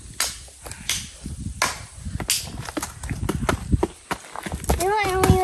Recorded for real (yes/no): yes